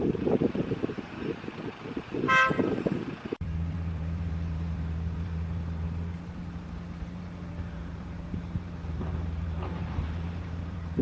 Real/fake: fake